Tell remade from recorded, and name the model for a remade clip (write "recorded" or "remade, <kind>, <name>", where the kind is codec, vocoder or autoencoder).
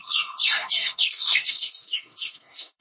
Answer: remade, codec, SNAC